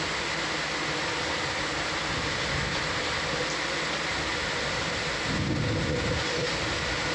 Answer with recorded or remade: recorded